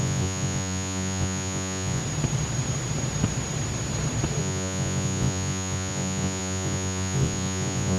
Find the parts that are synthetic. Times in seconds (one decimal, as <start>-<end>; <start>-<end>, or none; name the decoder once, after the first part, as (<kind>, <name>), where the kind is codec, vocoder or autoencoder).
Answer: 0.0-2.0 (vocoder, Vocos); 4.4-8.0

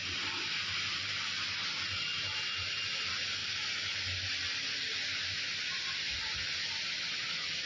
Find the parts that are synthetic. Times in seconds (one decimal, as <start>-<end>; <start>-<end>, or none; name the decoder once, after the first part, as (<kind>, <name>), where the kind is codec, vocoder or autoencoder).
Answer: none

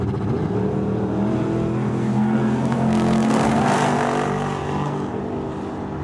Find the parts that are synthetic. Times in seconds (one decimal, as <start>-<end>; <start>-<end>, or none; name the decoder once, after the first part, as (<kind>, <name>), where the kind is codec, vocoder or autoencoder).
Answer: 1.9-5.2 (codec, SNAC)

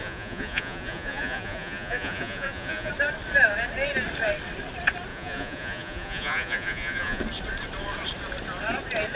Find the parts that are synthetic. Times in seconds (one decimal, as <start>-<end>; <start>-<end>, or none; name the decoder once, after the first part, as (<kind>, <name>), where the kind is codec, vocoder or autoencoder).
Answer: 0.0-2.9 (vocoder, Vocos); 5.1-7.2